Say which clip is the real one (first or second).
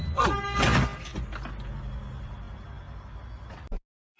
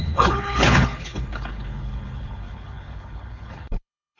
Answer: first